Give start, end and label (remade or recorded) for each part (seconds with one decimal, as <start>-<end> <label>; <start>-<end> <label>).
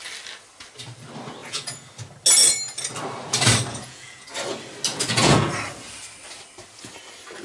0.0-1.4 recorded; 1.4-1.9 remade; 1.9-3.7 recorded; 3.7-4.3 remade; 4.3-4.9 recorded; 4.9-5.5 remade; 5.5-7.4 recorded